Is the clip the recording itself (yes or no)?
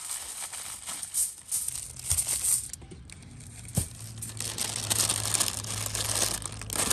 yes